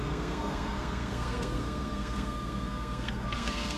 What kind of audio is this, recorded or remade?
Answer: remade